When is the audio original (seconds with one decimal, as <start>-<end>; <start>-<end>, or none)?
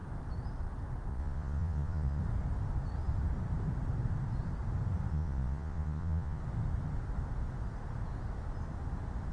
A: 0.0-1.1; 2.2-5.1; 6.4-9.3